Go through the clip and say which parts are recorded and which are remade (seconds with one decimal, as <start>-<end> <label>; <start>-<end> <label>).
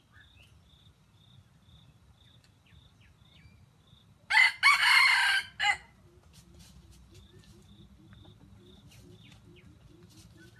0.0-10.6 recorded